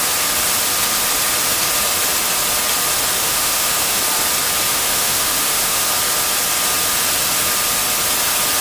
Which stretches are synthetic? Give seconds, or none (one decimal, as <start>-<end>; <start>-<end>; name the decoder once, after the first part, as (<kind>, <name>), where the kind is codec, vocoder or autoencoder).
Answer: 3.2-4.0 (autoencoder, DAC-VAE); 4.7-5.9